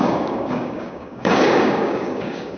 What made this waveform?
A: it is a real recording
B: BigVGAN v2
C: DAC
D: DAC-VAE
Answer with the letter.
C